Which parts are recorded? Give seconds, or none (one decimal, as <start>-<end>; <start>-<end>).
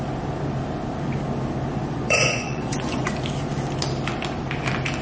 0.0-1.8; 3.1-5.0